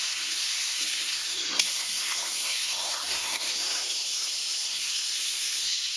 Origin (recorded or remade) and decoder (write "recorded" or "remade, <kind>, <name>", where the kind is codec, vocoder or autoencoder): remade, codec, SNAC